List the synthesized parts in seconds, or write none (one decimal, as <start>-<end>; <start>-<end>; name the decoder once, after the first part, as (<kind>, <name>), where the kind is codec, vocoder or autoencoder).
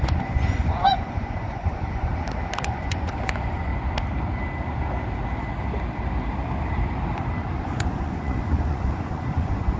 0.0-2.1 (vocoder, Vocos); 2.6-3.7; 7.6-9.8